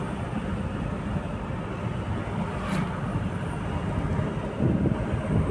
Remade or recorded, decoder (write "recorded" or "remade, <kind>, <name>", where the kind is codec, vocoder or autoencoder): recorded